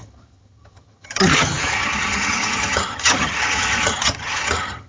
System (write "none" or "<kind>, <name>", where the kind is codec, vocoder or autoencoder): vocoder, HiFi-GAN